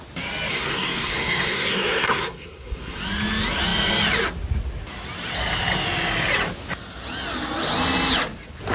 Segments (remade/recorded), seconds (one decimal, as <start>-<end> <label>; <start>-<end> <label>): 0.0-0.5 recorded; 0.5-3.0 remade; 3.0-8.7 recorded